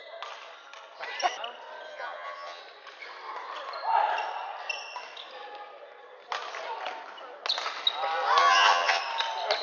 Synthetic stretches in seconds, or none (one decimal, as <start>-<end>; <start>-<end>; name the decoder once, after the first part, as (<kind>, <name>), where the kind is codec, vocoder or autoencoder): 1.9-2.6 (vocoder, HiFi-GAN); 8.4-9.0